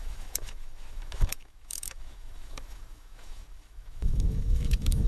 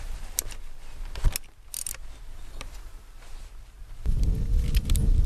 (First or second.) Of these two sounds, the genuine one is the second